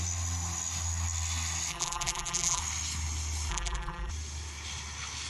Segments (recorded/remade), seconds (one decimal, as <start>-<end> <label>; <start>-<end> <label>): 0.0-1.7 recorded; 1.7-2.6 remade; 2.6-3.5 recorded; 3.5-4.1 remade; 4.1-5.3 recorded